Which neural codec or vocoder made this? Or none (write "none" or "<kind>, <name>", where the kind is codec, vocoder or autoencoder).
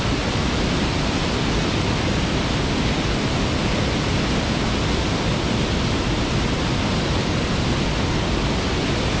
none